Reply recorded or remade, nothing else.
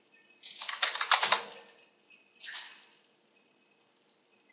recorded